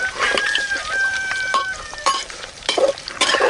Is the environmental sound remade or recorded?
remade